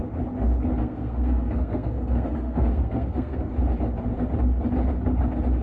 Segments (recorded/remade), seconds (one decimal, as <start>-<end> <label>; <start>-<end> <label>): 0.0-0.8 recorded; 0.8-3.4 remade; 3.4-5.6 recorded